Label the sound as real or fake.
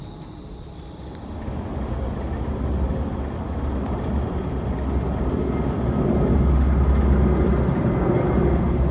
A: real